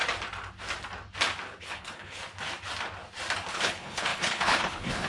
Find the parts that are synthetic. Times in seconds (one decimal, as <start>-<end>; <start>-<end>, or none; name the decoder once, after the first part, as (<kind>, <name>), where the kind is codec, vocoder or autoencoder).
1.6-2.2 (codec, HILCodec); 3.5-5.1